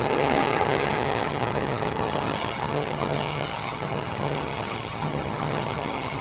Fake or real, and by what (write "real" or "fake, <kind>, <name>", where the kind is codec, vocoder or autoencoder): fake, vocoder, HiFi-GAN